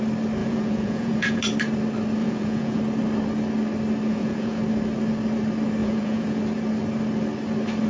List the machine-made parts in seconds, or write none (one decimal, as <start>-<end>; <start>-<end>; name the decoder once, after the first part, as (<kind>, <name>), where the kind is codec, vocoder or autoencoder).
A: 0.4-1.4 (vocoder, Vocos); 2.2-2.8; 4.1-4.6; 5.8-6.4